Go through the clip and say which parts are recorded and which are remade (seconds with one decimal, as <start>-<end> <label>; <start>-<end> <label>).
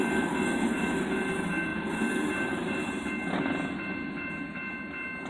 0.0-5.3 recorded